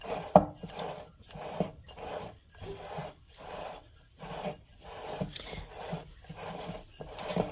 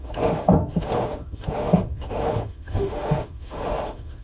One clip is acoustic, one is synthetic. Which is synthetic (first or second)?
second